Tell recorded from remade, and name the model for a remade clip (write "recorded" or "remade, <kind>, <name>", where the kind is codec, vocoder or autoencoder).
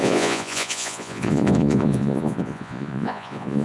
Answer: remade, vocoder, Vocos